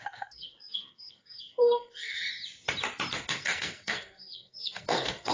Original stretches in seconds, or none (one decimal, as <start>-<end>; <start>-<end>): 2.2-3.1